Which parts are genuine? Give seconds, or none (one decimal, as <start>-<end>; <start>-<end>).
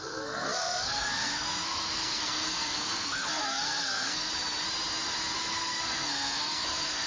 4.3-5.5